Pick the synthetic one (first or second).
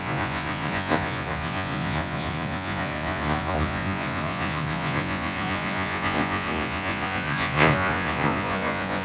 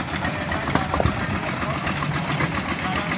first